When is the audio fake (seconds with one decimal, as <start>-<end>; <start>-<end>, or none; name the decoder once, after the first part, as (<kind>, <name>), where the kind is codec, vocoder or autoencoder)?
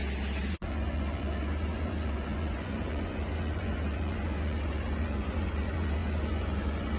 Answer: 0.5-7.0 (vocoder, Vocos)